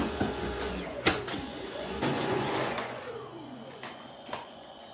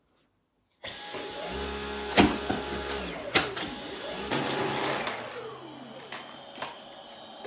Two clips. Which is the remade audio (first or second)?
first